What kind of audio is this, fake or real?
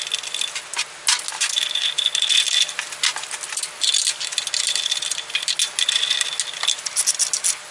real